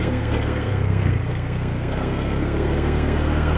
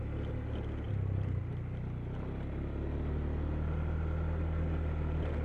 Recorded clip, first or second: second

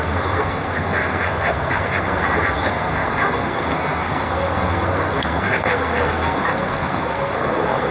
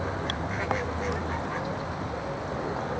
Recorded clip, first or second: second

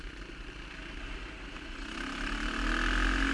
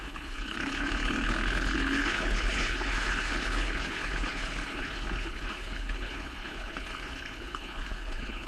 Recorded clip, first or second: first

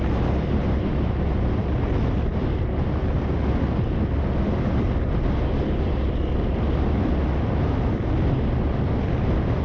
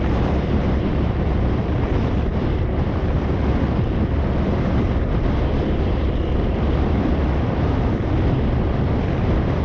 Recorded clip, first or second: first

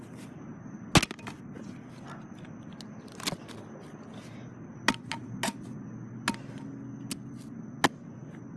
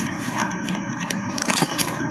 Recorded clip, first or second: first